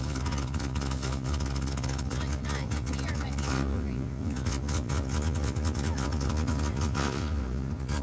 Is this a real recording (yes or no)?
no